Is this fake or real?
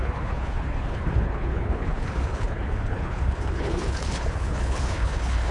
fake